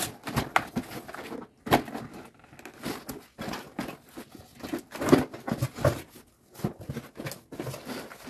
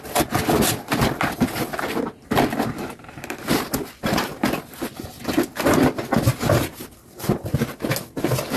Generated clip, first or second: second